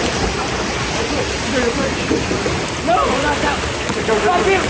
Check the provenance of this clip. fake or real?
real